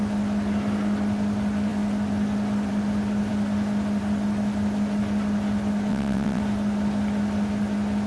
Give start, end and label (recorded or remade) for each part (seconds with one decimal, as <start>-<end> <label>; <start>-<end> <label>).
0.0-5.9 recorded; 5.9-6.4 remade; 6.4-8.1 recorded